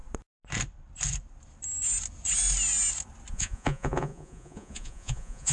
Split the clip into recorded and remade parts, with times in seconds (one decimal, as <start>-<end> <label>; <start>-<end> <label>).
0.0-3.3 recorded; 3.3-5.5 remade